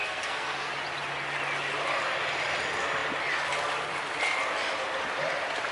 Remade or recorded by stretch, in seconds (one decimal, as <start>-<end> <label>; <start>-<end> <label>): 0.0-0.7 remade; 0.7-5.7 recorded